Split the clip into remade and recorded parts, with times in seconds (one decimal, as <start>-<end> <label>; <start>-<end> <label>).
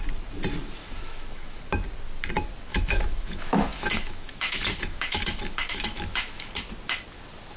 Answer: 0.0-0.8 recorded; 0.8-1.6 remade; 1.6-2.7 recorded; 2.7-6.5 remade; 6.5-7.6 recorded